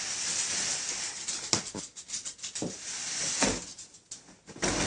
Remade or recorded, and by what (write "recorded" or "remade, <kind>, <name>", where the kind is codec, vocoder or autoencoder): recorded